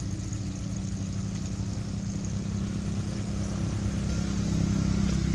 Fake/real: real